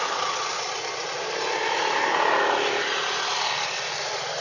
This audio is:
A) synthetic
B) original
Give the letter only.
B